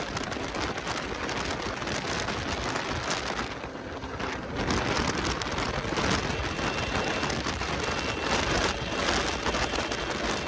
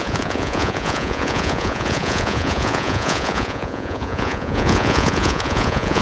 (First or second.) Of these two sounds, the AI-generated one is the second